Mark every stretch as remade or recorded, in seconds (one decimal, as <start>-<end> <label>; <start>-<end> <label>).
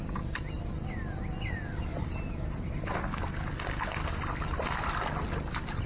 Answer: 0.0-1.9 recorded; 1.9-3.0 remade; 3.0-5.9 recorded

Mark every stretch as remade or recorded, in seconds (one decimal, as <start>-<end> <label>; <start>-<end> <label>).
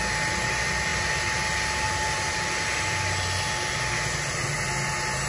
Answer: 0.0-5.3 recorded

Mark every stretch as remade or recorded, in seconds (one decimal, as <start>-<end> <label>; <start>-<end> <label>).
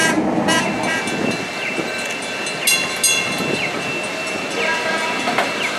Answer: 0.0-5.8 recorded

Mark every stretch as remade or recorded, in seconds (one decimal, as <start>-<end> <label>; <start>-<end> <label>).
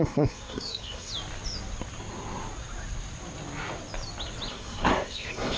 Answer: 0.0-1.1 remade; 1.1-4.5 recorded; 4.5-5.6 remade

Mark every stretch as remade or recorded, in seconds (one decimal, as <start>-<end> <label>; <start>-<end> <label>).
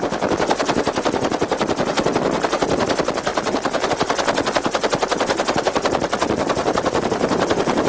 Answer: 0.0-3.3 recorded; 3.3-3.9 remade; 3.9-7.9 recorded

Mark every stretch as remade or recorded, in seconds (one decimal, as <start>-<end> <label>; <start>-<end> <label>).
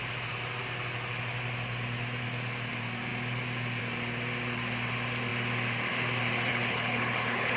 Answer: 0.0-6.5 recorded; 6.5-7.6 remade